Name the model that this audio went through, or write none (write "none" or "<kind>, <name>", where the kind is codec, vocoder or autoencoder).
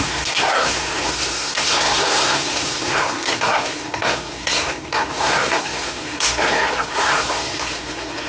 codec, SNAC